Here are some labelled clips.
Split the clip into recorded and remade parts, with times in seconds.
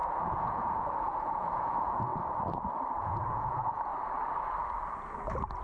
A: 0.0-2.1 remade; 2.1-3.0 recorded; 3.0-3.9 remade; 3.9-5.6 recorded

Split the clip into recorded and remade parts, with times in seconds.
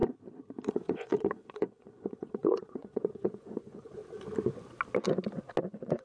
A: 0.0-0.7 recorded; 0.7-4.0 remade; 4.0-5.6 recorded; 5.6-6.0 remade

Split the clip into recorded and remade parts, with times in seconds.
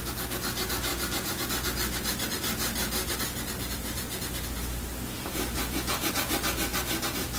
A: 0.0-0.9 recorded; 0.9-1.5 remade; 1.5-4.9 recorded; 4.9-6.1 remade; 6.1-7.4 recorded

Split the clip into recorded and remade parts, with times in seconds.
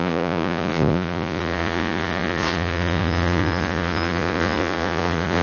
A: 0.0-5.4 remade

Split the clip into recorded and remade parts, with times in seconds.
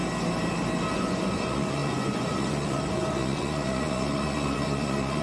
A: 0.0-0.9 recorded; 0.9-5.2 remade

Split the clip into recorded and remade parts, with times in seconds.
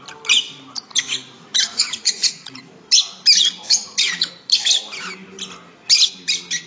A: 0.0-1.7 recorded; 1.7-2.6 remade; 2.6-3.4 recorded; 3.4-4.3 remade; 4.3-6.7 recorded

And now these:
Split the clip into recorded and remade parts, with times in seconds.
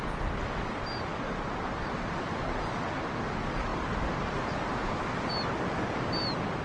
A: 0.0-6.6 recorded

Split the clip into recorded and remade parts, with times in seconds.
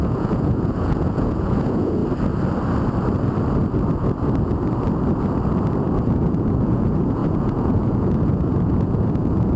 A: 0.0-2.0 remade; 2.0-6.0 recorded; 6.0-9.6 remade